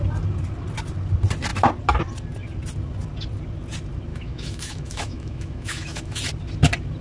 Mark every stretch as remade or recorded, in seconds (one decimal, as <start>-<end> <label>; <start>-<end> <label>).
0.0-4.1 recorded; 4.1-6.2 remade; 6.2-7.0 recorded